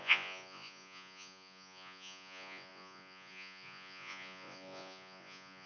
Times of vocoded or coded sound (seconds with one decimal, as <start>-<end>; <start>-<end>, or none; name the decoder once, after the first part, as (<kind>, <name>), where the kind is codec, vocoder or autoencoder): 0.0-5.7 (vocoder, Vocos)